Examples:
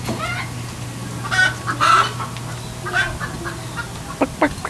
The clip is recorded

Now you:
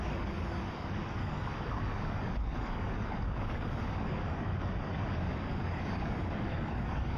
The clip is remade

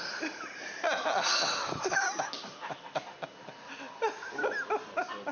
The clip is recorded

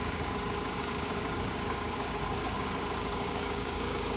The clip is remade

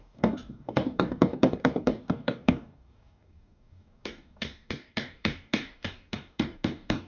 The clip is remade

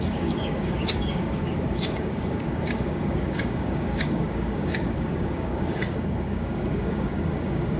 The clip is remade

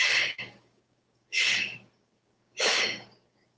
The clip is remade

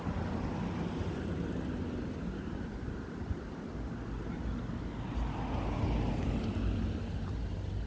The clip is recorded